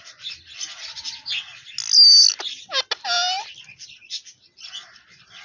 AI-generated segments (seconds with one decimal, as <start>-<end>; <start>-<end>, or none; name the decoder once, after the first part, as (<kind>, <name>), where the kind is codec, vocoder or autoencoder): none